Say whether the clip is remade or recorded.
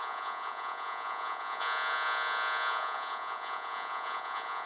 remade